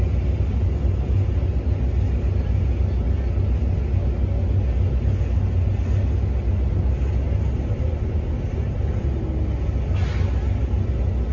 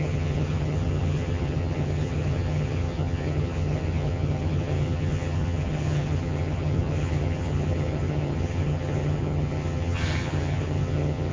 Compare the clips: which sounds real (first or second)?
first